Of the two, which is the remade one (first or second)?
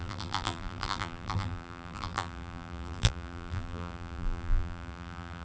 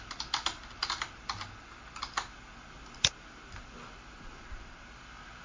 first